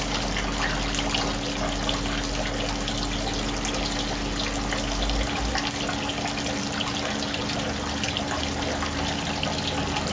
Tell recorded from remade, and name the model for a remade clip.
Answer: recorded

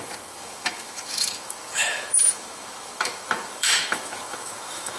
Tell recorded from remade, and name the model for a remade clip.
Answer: remade, autoencoder, DAC-VAE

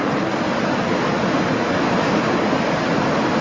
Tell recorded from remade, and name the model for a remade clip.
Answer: recorded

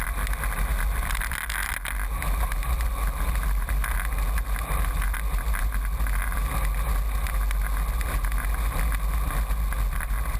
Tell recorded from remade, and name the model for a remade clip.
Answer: recorded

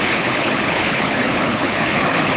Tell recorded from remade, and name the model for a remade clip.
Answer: remade, codec, HILCodec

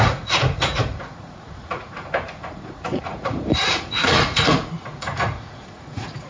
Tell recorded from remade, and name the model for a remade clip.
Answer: remade, vocoder, Vocos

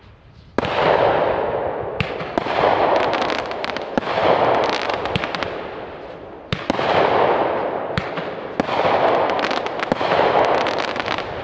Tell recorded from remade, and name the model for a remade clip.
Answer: recorded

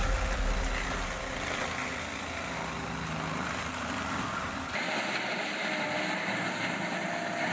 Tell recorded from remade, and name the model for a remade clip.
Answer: recorded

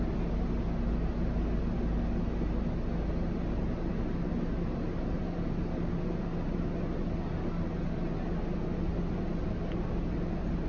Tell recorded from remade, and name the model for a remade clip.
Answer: recorded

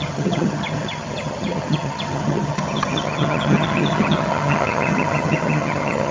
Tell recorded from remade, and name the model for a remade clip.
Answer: remade, vocoder, HiFi-GAN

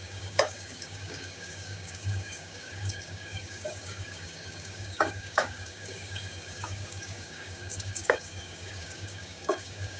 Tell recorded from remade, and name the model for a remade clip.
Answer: remade, codec, DAC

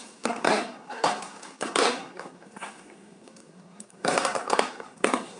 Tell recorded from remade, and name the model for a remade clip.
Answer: remade, codec, SNAC